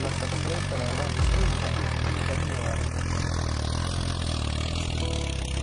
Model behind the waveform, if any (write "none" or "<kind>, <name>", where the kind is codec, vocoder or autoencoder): none